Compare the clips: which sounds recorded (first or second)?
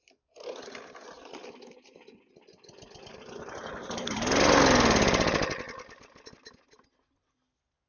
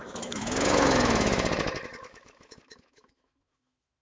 first